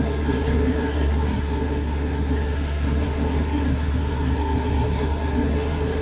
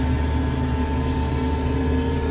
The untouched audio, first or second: second